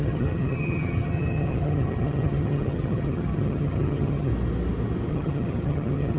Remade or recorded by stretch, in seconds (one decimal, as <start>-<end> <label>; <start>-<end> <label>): 0.0-4.3 remade; 4.3-5.1 recorded; 5.1-6.2 remade